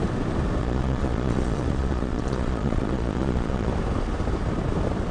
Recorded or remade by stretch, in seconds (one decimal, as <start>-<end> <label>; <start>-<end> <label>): 0.0-0.6 recorded; 0.6-3.7 remade; 3.7-5.1 recorded